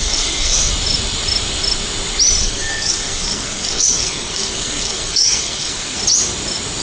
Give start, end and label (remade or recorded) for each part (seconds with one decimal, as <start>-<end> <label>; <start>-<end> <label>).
0.0-0.7 remade; 0.7-2.4 recorded; 2.4-6.0 remade; 6.0-6.8 recorded